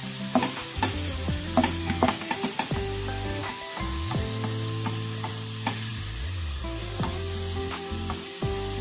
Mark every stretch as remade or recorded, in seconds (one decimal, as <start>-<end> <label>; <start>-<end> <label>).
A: 0.0-1.8 recorded; 1.8-2.3 remade; 2.3-8.8 recorded

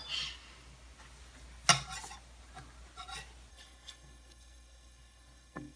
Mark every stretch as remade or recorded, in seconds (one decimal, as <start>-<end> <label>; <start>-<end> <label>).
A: 0.0-3.5 recorded; 3.5-5.8 remade

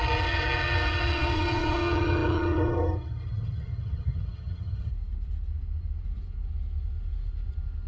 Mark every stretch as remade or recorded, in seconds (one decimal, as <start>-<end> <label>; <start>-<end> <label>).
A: 0.0-4.9 remade; 4.9-7.9 recorded

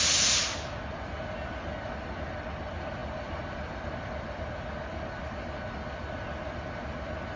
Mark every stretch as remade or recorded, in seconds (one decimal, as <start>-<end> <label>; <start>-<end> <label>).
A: 0.0-7.4 recorded

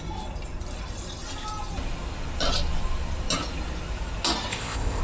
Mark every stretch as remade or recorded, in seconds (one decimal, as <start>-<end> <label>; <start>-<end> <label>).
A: 0.0-4.5 recorded; 4.5-5.0 remade

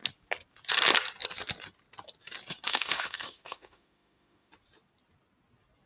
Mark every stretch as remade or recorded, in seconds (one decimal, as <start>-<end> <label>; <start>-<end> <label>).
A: 0.0-2.7 recorded; 2.7-4.5 remade; 4.5-5.9 recorded